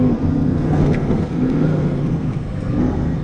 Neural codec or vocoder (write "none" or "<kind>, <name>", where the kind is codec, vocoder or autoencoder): codec, SNAC